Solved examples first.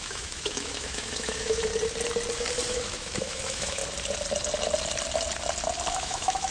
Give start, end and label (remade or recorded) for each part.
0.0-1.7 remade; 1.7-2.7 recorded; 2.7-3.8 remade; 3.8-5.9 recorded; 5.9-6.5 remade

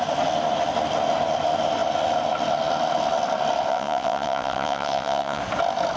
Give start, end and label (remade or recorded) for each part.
0.0-3.7 recorded; 3.7-5.4 remade; 5.4-6.0 recorded

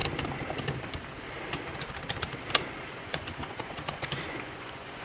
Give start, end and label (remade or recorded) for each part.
0.0-3.0 recorded; 3.0-5.0 remade